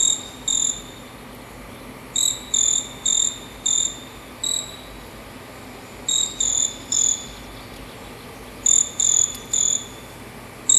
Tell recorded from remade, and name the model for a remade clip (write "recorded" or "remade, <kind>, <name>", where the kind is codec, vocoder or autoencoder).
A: recorded